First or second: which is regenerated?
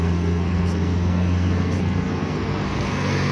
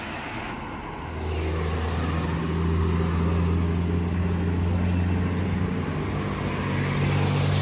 first